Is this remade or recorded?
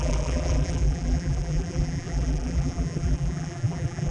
remade